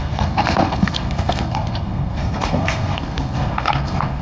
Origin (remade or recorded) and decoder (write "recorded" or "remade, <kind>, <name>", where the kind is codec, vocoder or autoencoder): remade, codec, SNAC